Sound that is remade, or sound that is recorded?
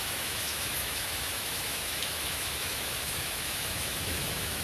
remade